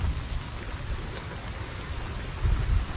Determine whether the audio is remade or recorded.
recorded